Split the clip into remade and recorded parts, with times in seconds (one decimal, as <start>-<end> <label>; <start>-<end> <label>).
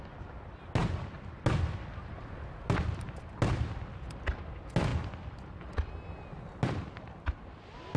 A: 0.0-8.0 recorded